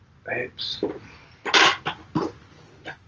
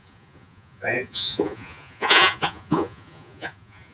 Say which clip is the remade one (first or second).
second